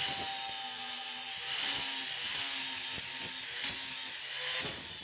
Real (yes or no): yes